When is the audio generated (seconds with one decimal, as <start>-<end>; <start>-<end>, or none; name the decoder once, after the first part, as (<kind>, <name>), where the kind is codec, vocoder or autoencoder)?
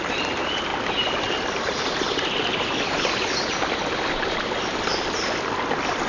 none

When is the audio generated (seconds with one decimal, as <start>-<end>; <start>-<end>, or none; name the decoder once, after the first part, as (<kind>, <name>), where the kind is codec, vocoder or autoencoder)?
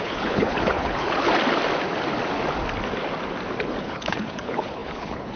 0.0-1.3 (codec, HILCodec); 3.8-5.4